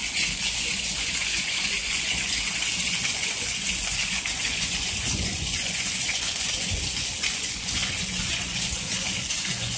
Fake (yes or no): yes